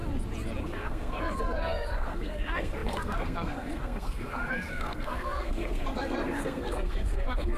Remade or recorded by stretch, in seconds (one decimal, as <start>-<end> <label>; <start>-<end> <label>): 0.0-0.6 recorded; 0.6-7.6 remade